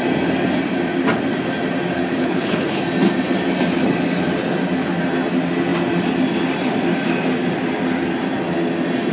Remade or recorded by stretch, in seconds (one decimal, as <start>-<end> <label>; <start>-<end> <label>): 0.0-2.2 recorded; 2.2-2.8 remade; 2.8-9.1 recorded